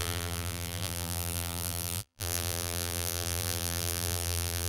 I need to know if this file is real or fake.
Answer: fake